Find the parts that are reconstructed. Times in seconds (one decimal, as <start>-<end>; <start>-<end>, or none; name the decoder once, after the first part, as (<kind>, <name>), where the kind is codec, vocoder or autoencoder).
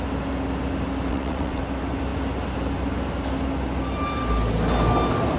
1.1-1.6 (vocoder, WaveNeXt)